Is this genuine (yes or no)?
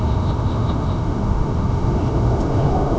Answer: no